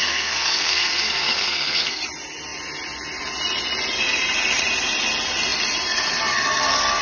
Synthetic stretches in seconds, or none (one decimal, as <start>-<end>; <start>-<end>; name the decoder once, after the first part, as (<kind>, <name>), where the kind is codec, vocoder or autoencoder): 0.0-2.0 (codec, SNAC)